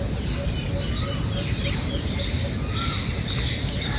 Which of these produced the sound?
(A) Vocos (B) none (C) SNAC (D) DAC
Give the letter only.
B